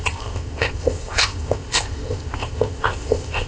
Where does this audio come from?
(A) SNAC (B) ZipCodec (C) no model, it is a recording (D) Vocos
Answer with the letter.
B